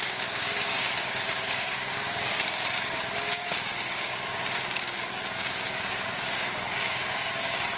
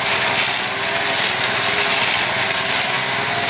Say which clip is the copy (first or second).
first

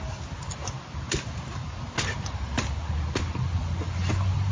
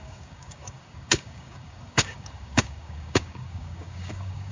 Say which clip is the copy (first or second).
second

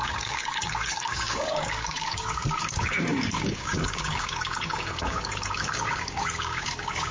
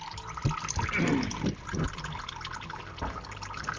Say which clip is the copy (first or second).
first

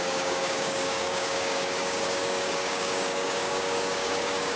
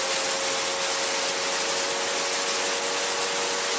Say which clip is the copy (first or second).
first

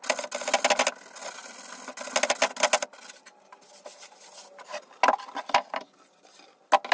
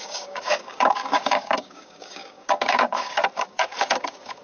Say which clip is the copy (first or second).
second